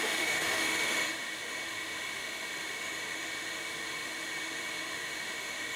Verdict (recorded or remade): remade